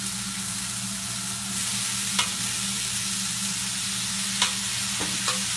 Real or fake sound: real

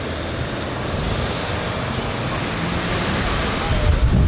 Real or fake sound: real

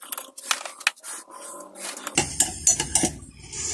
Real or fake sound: real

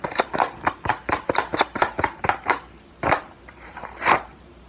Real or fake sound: fake